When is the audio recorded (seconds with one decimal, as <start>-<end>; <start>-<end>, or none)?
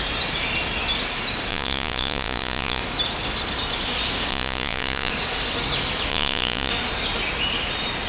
0.0-1.5; 2.8-4.3; 5.1-6.1; 6.7-8.1